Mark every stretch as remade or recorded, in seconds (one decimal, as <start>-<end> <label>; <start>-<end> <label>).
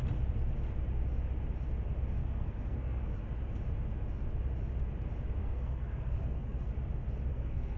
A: 0.0-2.2 recorded; 2.2-3.1 remade; 3.1-5.4 recorded; 5.4-6.7 remade; 6.7-7.3 recorded; 7.3-7.8 remade